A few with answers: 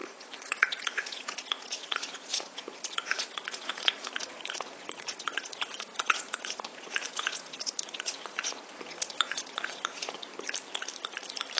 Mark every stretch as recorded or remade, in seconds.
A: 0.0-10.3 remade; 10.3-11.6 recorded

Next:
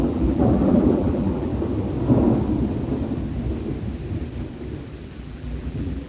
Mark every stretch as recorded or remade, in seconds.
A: 0.0-1.5 remade; 1.5-5.2 recorded; 5.2-6.1 remade